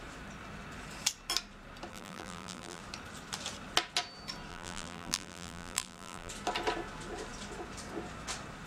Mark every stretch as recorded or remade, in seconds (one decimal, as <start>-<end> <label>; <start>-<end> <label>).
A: 0.0-1.9 recorded; 1.9-2.8 remade; 2.8-4.5 recorded; 4.5-6.3 remade; 6.3-8.7 recorded